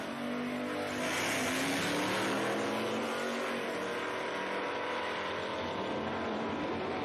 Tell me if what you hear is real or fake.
real